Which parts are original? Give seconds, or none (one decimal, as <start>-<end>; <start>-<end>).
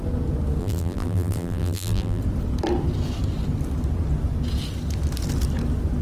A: 0.0-0.6; 2.2-6.0